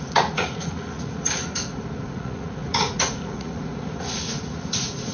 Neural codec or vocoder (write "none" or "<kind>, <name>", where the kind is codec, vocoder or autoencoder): vocoder, Vocos